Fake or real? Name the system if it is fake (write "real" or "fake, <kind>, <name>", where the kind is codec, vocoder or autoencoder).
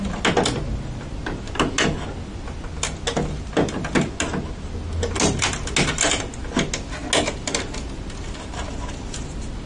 real